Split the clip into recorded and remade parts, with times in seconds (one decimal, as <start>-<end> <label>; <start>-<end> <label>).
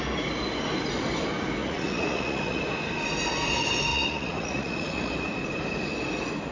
0.0-1.6 recorded; 1.6-2.6 remade; 2.6-3.9 recorded; 3.9-5.1 remade; 5.1-6.5 recorded